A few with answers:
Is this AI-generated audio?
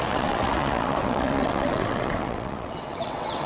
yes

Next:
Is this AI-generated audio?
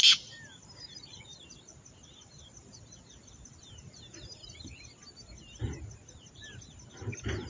no